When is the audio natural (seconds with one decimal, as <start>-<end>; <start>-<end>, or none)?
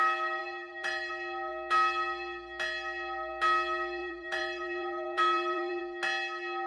0.0-0.4; 1.1-4.0; 5.8-6.7